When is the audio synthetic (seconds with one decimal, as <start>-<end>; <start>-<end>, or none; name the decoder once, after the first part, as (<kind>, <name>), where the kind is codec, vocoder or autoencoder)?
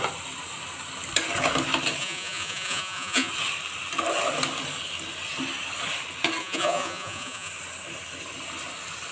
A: 2.0-3.3 (vocoder, Vocos); 6.4-7.5